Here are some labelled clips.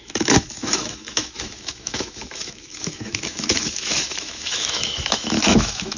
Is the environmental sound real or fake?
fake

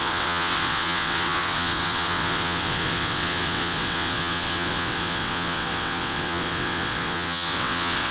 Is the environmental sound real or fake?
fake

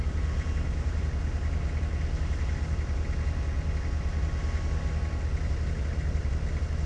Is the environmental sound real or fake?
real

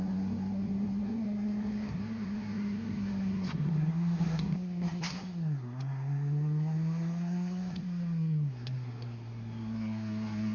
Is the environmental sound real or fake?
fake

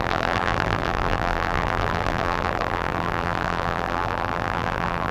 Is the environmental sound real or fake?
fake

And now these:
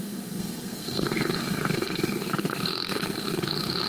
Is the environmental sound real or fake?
fake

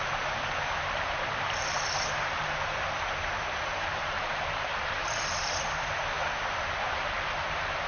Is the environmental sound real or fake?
fake